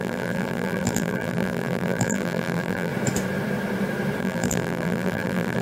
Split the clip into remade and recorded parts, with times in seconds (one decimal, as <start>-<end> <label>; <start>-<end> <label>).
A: 0.0-2.9 remade; 2.9-4.2 recorded; 4.2-5.6 remade